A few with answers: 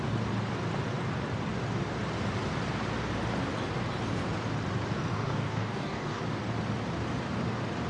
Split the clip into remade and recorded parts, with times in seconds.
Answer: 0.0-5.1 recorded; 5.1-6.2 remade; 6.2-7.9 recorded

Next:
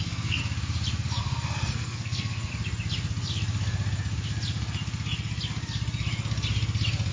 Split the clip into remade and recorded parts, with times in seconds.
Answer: 0.0-0.4 remade; 0.4-1.2 recorded; 1.2-2.5 remade; 2.5-7.1 recorded

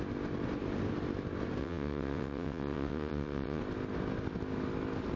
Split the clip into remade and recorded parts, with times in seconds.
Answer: 0.0-1.6 recorded; 1.6-3.6 remade; 3.6-5.2 recorded

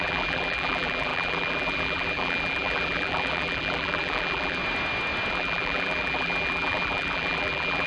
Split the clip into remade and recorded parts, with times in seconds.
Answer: 0.0-4.6 remade; 4.6-5.3 recorded; 5.3-7.9 remade

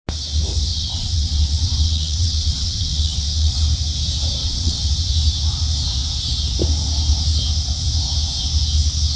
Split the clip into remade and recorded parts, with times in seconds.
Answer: 0.0-0.7 recorded; 0.7-3.5 remade; 3.5-4.4 recorded; 4.4-4.9 remade; 4.9-9.2 recorded

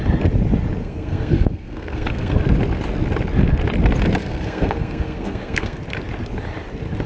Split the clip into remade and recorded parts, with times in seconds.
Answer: 0.0-0.8 recorded; 0.8-2.4 remade; 2.4-4.2 recorded; 4.2-5.8 remade; 5.8-7.1 recorded

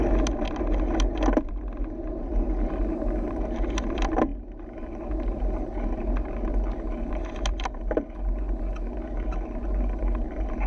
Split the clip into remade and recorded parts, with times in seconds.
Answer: 0.0-10.7 recorded